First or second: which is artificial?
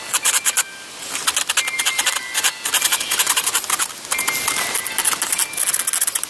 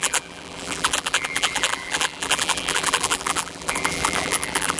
second